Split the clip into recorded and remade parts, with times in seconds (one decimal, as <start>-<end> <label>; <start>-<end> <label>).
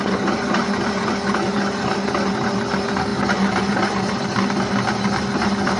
0.0-5.8 recorded